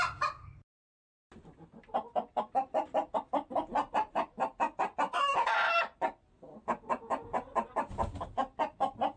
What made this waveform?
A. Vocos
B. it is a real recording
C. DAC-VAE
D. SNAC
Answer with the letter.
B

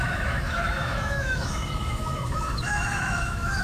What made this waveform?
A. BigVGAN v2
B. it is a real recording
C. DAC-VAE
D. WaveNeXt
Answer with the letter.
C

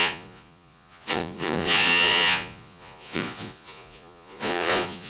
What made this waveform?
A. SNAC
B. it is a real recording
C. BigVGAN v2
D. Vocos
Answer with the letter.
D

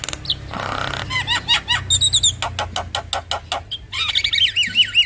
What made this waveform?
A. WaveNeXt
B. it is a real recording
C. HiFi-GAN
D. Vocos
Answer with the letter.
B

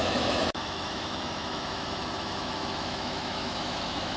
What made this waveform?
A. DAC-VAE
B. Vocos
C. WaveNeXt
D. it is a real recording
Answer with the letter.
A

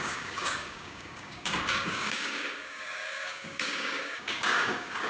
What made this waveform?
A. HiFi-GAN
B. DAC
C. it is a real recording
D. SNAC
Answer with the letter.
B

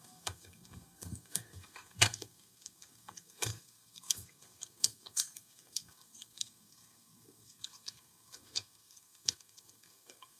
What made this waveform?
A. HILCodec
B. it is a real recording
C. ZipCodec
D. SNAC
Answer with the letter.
D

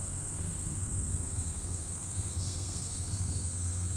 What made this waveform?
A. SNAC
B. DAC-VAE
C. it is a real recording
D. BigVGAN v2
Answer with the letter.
A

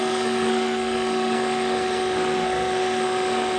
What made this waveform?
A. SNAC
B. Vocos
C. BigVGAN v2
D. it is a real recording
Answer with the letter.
A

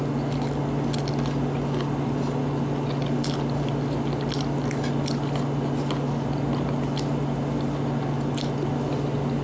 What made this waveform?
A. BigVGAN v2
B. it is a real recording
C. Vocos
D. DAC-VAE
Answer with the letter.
B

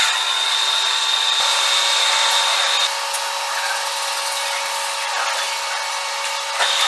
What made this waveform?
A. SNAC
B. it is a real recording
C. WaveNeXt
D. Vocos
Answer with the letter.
B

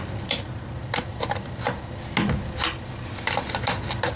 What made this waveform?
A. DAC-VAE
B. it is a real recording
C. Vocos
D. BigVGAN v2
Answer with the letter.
B